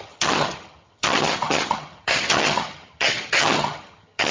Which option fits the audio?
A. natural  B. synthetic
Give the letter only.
B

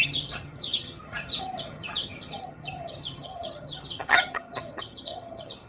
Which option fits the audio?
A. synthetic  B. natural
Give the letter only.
A